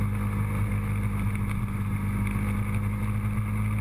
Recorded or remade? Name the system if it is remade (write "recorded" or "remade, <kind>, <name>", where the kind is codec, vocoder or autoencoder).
recorded